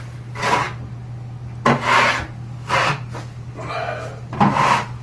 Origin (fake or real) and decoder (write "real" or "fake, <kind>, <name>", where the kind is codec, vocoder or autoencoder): real